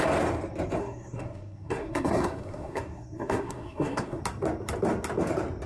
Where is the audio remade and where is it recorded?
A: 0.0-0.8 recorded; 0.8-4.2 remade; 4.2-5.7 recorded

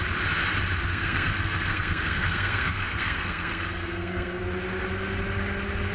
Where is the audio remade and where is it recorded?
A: 0.0-0.9 recorded; 0.9-4.4 remade; 4.4-5.9 recorded

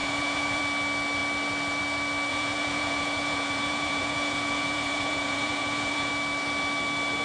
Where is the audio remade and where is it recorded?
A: 0.0-0.6 remade; 0.6-2.3 recorded; 2.3-6.1 remade; 6.1-7.2 recorded